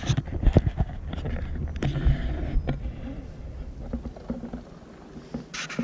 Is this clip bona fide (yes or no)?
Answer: yes